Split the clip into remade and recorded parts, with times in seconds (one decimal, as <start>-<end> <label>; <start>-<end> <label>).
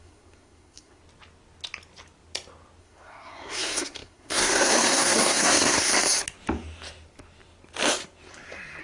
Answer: 0.0-1.0 remade; 1.0-2.8 recorded; 2.8-5.9 remade; 5.9-8.8 recorded